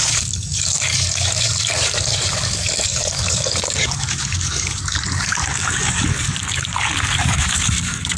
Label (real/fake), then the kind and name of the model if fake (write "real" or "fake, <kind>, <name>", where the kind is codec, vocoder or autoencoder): fake, codec, DAC